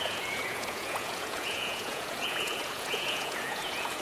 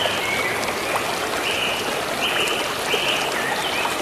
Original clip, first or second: second